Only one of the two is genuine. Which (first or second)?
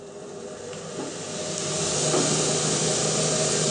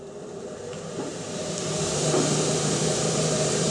first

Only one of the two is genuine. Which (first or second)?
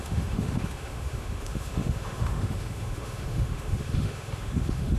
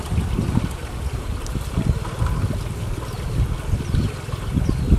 second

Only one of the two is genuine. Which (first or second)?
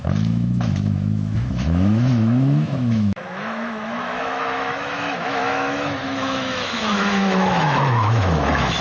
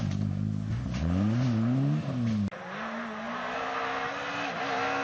second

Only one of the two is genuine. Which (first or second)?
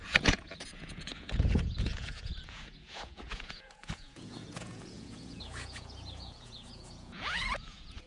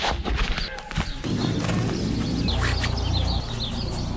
second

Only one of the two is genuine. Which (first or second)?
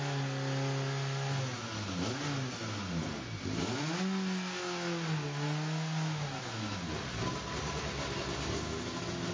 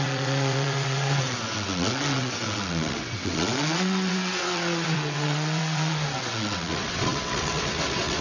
first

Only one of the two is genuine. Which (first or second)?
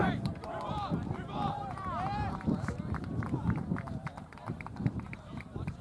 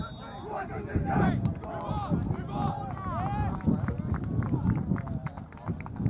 second